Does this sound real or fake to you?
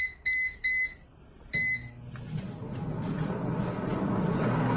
real